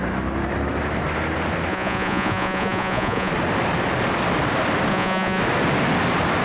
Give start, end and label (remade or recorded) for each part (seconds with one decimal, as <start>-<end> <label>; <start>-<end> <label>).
0.0-1.7 recorded; 1.7-3.3 remade; 3.3-4.9 recorded; 4.9-5.4 remade; 5.4-6.4 recorded